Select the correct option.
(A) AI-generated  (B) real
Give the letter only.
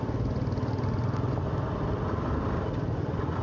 B